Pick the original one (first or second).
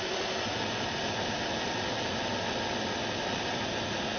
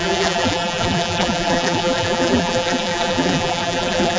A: first